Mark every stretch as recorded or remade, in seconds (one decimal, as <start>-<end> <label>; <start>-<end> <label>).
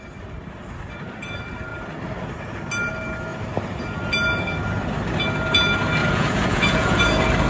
0.0-6.0 recorded; 6.0-7.0 remade; 7.0-7.5 recorded